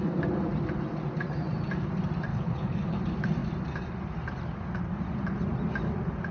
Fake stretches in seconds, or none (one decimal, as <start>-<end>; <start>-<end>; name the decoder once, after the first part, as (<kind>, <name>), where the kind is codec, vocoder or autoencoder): 2.3-3.0 (codec, HILCodec)